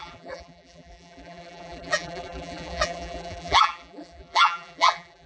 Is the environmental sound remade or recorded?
remade